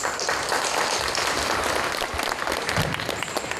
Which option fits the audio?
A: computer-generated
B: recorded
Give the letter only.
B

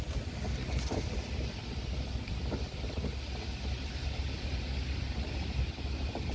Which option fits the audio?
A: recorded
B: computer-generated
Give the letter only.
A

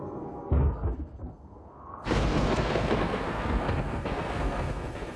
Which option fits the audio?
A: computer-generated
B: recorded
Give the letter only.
A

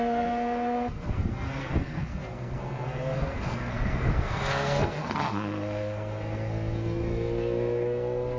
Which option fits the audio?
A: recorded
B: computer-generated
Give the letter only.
B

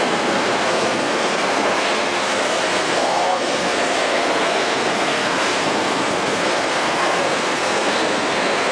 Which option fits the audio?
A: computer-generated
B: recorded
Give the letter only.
A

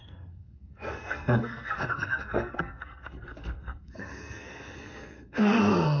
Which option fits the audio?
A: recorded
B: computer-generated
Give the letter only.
B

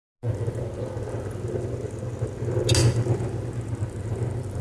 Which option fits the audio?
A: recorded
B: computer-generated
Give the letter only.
A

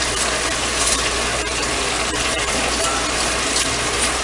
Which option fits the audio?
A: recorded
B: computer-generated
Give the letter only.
A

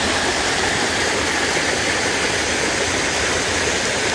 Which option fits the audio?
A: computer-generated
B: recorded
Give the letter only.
B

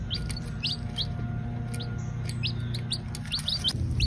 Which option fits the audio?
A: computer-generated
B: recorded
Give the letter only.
B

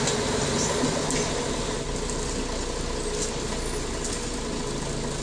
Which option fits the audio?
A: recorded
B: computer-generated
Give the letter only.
A